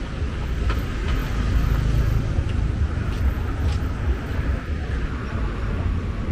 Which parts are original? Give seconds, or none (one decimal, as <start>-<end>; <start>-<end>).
0.0-6.3